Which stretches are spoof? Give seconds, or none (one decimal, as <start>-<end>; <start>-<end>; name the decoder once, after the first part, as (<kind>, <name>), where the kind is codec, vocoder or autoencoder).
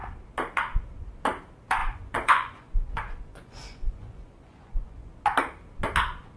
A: 1.8-5.1 (vocoder, Vocos)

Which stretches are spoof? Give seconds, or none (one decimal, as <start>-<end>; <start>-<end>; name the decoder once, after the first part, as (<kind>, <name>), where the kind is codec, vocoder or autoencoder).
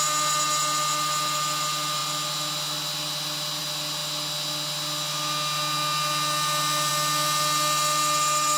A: none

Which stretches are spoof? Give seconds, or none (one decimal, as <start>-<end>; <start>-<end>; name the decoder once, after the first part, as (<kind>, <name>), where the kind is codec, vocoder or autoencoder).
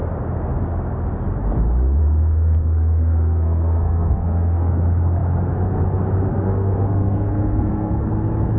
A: 2.0-4.7 (codec, SNAC); 6.3-8.1